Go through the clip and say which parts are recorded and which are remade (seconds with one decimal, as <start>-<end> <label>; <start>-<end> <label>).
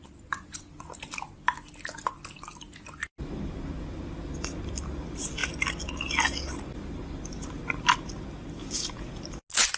0.0-8.6 recorded; 8.6-9.2 remade; 9.2-9.8 recorded